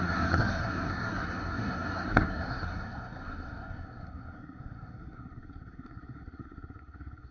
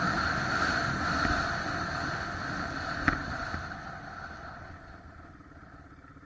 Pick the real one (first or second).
second